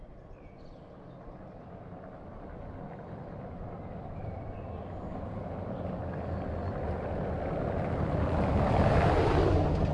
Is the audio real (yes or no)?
yes